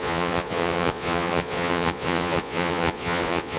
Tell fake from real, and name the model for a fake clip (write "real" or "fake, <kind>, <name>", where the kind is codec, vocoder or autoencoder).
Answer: fake, vocoder, Vocos